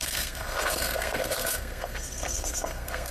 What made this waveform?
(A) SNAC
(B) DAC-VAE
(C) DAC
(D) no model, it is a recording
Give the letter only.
A